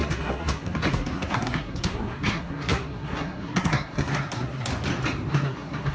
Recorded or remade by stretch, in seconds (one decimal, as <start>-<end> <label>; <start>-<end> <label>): 0.0-4.7 remade; 4.7-5.3 recorded; 5.3-5.9 remade